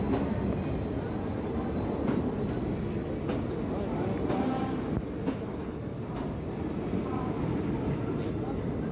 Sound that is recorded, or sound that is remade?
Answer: recorded